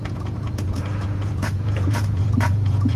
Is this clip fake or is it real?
fake